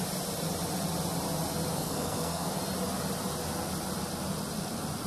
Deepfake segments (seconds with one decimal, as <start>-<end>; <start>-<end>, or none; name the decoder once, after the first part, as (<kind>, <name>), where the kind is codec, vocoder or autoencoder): 1.7-2.5 (codec, SNAC)